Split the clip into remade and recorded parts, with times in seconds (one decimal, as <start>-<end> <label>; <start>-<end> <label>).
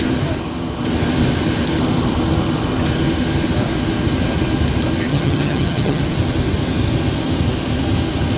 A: 0.0-5.1 recorded; 5.1-6.0 remade; 6.0-8.4 recorded